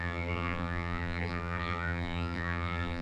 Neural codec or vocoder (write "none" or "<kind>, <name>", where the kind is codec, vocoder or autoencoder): vocoder, BigVGAN v2